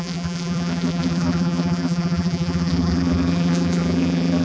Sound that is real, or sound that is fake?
fake